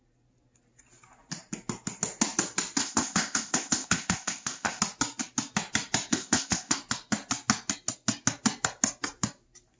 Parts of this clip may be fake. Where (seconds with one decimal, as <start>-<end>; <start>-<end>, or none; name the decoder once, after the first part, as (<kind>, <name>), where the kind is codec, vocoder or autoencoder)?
2.8-4.8 (codec, ZipCodec); 6.1-6.8